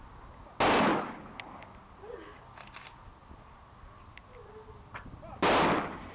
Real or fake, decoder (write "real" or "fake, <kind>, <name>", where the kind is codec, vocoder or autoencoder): real